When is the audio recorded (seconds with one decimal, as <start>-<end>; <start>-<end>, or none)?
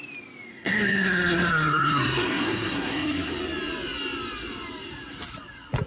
0.0-0.5; 3.3-5.9